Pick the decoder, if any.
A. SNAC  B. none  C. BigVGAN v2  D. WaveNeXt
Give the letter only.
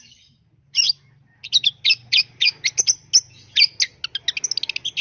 B